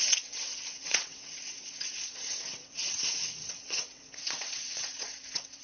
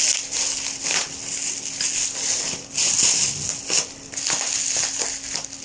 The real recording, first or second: second